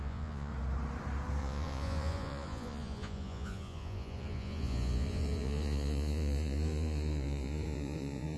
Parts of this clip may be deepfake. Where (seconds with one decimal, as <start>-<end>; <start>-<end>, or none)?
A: 0.0-0.5; 1.4-8.4